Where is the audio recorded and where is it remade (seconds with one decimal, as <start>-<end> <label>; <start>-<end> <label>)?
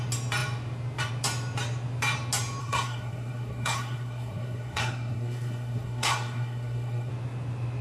0.0-2.6 recorded; 2.6-7.1 remade; 7.1-7.8 recorded